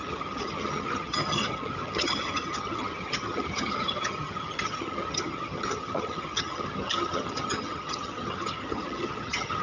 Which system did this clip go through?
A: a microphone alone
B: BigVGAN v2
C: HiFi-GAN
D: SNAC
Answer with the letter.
C